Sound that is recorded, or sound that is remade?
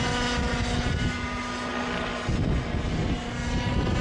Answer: recorded